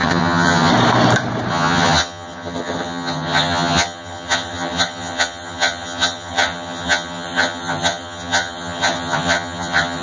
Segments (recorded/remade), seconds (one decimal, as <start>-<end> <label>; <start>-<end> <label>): 0.0-0.7 remade; 0.7-1.5 recorded; 1.5-10.0 remade